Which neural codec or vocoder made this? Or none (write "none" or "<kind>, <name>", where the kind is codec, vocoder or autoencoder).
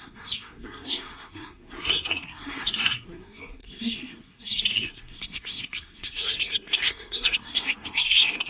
codec, SNAC